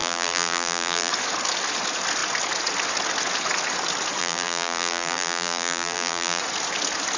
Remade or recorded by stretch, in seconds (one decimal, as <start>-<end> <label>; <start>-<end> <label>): 0.0-1.1 remade; 1.1-4.2 recorded; 4.2-6.4 remade; 6.4-7.2 recorded